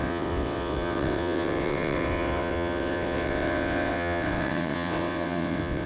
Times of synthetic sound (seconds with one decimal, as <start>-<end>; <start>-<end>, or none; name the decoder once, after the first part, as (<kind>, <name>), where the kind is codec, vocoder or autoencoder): 0.0-5.9 (vocoder, WaveNeXt)